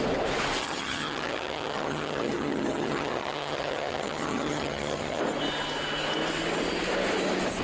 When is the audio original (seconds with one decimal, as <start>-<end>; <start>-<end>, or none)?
0.0-0.6; 5.2-7.6